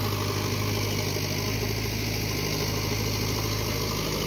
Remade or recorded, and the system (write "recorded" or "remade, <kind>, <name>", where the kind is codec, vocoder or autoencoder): recorded